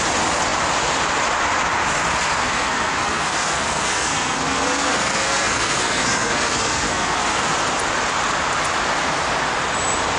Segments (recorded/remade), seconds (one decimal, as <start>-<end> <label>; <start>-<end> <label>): 0.0-2.4 recorded; 2.4-7.4 remade; 7.4-10.2 recorded